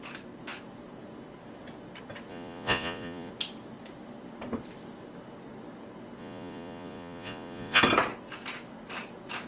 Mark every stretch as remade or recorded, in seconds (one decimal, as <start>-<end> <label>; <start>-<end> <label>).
0.0-2.3 recorded; 2.3-3.3 remade; 3.3-6.2 recorded; 6.2-7.8 remade; 7.8-9.5 recorded